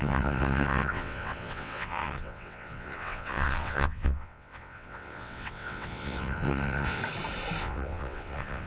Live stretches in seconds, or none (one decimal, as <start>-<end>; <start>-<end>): 7.0-7.6